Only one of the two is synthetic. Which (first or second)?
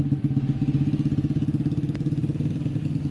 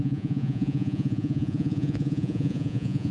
second